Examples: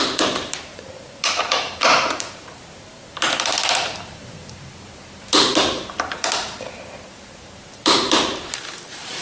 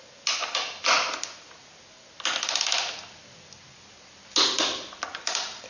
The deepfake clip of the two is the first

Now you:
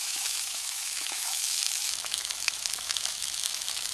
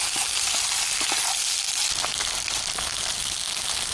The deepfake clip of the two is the first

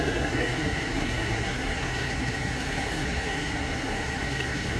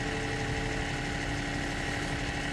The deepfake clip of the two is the first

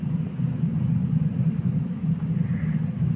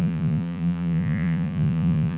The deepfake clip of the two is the second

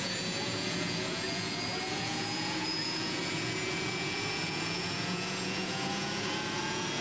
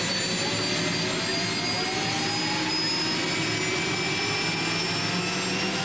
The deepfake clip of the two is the first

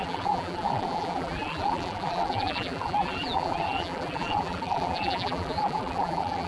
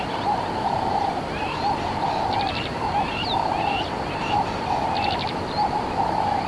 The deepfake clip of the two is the first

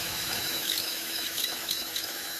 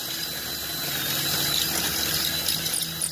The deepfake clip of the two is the first